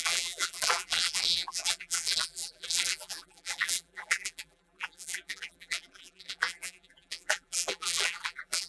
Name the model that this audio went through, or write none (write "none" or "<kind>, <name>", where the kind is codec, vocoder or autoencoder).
vocoder, BigVGAN v2